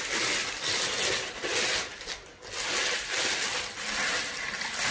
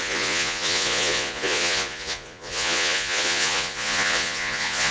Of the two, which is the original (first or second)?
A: first